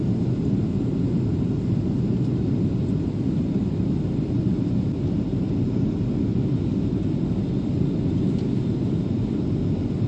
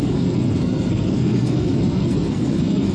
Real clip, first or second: first